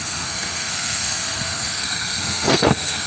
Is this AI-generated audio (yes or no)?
yes